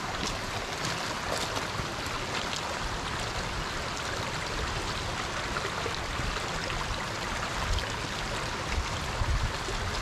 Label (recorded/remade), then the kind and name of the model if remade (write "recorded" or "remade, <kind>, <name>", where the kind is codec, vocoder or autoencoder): recorded